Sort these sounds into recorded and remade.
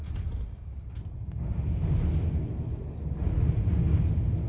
recorded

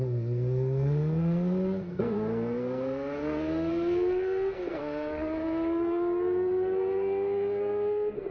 remade